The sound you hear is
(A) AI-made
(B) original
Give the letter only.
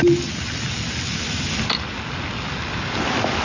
B